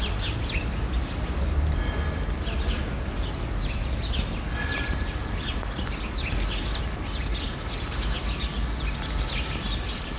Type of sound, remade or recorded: recorded